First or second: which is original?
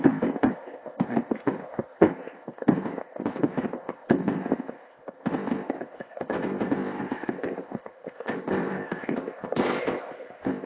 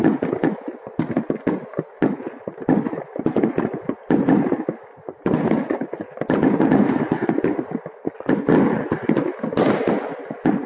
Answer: second